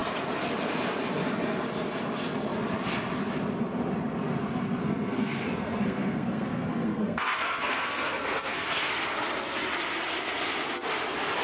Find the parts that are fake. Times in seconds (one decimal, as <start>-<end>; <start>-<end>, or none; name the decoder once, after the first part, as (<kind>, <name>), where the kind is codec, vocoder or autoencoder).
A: 4.8-8.9 (codec, SNAC)